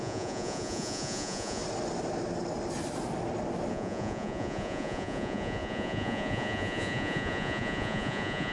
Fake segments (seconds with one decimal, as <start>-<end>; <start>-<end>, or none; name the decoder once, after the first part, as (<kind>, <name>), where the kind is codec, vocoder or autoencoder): 0.0-1.6 (vocoder, Vocos); 3.7-8.5